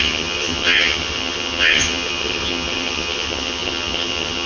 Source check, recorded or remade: remade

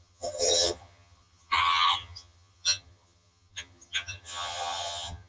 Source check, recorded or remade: remade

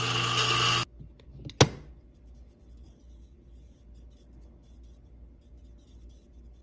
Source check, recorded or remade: recorded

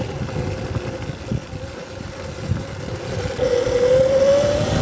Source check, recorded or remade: recorded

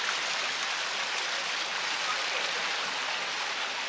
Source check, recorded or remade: recorded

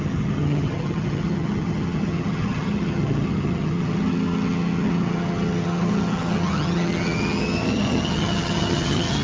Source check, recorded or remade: remade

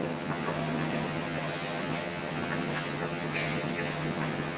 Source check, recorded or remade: remade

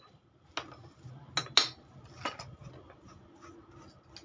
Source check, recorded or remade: recorded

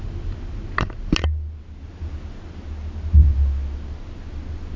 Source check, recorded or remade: recorded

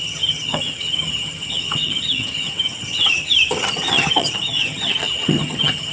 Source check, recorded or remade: remade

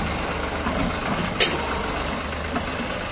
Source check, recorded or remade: recorded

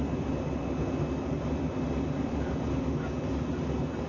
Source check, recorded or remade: recorded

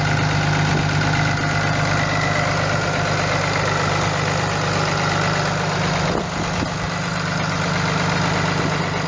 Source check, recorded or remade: recorded